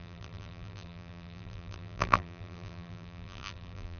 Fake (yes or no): yes